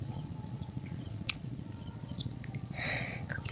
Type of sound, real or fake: fake